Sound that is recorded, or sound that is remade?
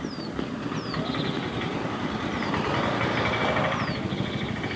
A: recorded